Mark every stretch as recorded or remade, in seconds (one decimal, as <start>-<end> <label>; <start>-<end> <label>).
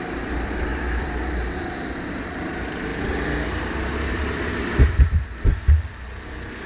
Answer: 0.0-0.7 remade; 0.7-2.1 recorded; 2.1-2.9 remade; 2.9-3.6 recorded; 3.6-5.5 remade; 5.5-6.7 recorded